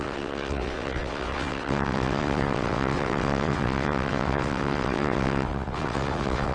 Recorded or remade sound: remade